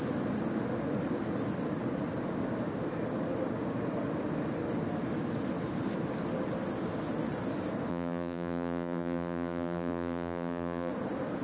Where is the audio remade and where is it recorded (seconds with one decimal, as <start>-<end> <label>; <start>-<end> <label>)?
0.0-7.9 recorded; 7.9-10.9 remade; 10.9-11.4 recorded